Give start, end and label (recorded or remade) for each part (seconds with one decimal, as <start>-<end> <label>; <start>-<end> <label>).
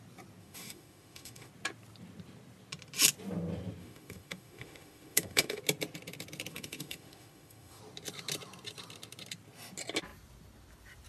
0.0-0.4 recorded; 0.4-1.5 remade; 1.5-3.8 recorded; 3.8-5.6 remade; 5.6-6.5 recorded; 6.5-7.8 remade; 7.8-11.1 recorded